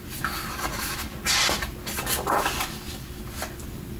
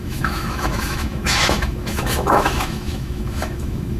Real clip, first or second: first